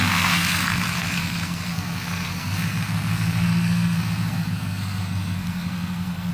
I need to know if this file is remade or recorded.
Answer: remade